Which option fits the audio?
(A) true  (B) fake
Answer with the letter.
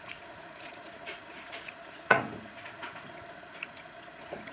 B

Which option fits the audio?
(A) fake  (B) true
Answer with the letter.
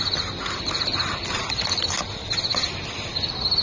B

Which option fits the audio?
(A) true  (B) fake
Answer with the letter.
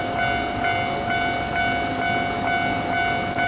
A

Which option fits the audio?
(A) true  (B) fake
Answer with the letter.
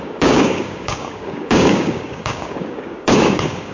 B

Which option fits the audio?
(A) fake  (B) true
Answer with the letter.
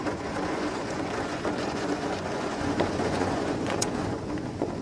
A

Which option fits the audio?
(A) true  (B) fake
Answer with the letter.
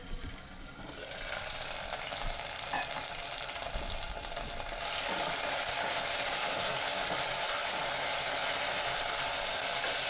A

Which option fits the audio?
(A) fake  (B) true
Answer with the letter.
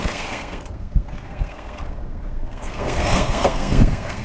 A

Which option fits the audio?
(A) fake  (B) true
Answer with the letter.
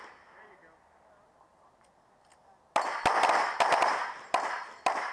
B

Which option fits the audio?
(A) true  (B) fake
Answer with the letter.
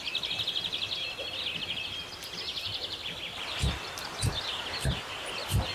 A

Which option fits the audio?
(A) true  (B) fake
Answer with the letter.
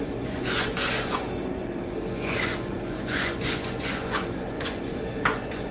B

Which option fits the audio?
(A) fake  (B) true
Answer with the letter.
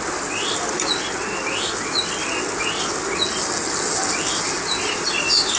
B